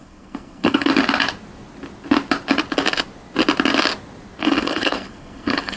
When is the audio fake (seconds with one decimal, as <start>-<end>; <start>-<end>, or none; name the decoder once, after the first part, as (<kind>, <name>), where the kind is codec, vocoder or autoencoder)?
0.0-0.9 (codec, SNAC); 4.4-5.8

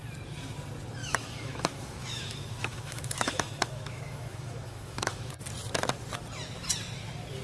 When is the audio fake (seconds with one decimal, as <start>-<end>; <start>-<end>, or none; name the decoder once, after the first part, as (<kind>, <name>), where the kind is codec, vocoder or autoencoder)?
1.0-5.3 (autoencoder, DAC-VAE)